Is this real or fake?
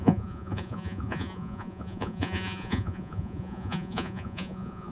fake